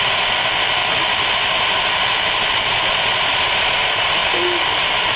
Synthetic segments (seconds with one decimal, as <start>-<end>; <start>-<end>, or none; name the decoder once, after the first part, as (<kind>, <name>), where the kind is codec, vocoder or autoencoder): 0.0-0.4 (vocoder, Vocos); 2.7-4.2